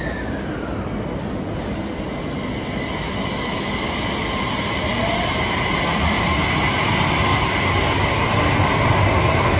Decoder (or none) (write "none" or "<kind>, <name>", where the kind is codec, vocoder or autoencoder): none